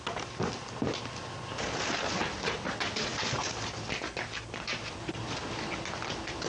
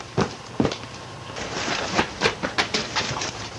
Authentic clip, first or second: first